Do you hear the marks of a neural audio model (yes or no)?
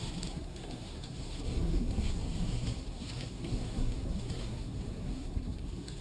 yes